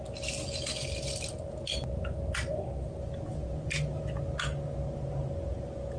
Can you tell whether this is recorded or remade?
recorded